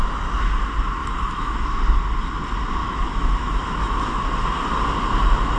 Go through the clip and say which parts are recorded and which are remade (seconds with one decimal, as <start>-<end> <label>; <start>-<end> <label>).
0.0-1.0 recorded; 1.0-1.8 remade; 1.8-2.8 recorded; 2.8-4.2 remade; 4.2-5.6 recorded